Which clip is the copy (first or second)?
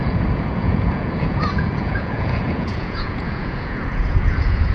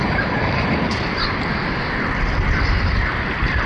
first